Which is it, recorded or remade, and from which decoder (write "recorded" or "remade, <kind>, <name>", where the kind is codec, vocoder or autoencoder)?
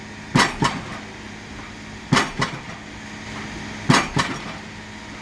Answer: recorded